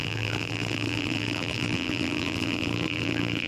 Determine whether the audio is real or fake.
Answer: fake